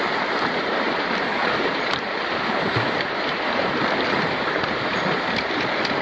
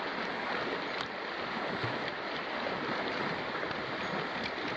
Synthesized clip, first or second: first